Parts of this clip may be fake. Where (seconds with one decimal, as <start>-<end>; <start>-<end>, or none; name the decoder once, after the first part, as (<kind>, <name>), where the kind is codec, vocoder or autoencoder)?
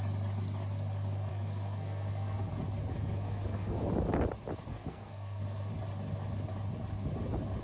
1.3-2.5 (codec, SNAC); 2.9-3.9; 4.7-5.7